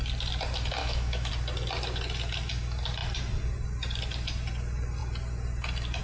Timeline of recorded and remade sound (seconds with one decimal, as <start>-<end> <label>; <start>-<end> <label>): 0.0-0.8 recorded; 0.8-1.3 remade; 1.3-6.0 recorded